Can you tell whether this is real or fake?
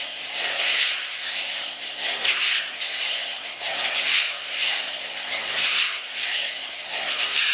fake